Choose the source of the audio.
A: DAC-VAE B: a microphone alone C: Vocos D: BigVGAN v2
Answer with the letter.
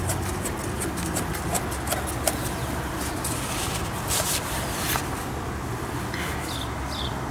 B